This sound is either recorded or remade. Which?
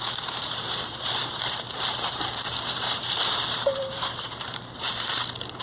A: remade